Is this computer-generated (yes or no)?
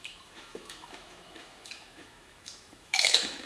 yes